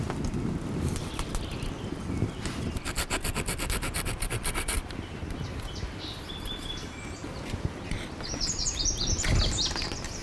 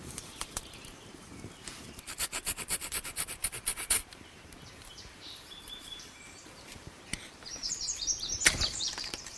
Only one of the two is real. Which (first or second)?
first